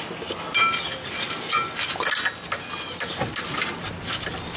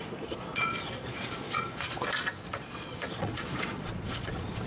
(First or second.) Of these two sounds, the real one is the first